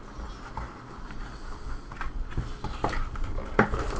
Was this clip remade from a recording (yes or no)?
no